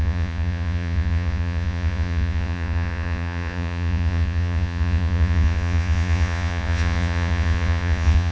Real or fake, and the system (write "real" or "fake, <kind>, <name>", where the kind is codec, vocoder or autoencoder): fake, vocoder, Vocos